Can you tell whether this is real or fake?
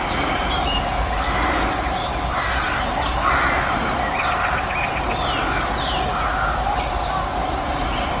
real